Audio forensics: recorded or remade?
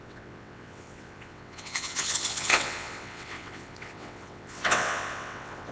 remade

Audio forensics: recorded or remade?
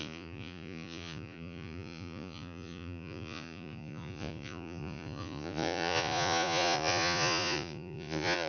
remade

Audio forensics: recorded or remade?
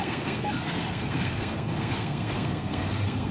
remade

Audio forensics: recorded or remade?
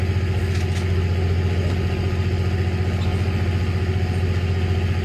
recorded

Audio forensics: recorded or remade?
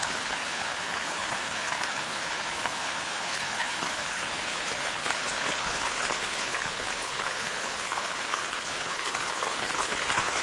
remade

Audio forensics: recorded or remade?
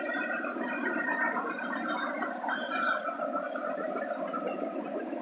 recorded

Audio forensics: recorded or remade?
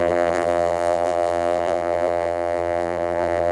remade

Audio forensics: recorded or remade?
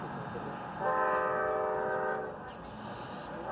recorded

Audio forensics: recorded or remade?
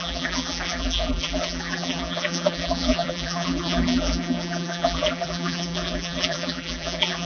remade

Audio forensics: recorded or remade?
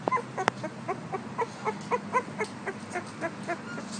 recorded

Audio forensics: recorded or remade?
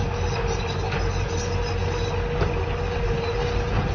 recorded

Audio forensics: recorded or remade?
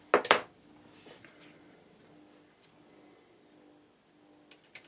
recorded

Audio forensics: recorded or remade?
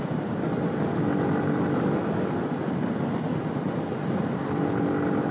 recorded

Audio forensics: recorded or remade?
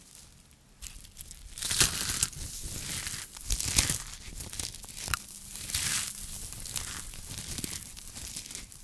recorded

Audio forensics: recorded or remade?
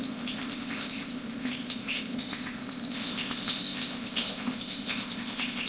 remade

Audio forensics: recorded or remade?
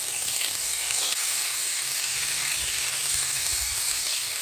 remade